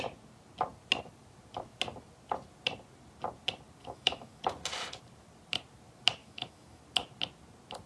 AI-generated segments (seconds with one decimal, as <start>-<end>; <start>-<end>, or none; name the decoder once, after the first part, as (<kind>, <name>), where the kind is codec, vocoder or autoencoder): 3.8-4.4 (autoencoder, DAC-VAE); 6.2-6.8